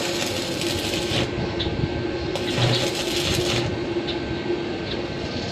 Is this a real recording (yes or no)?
yes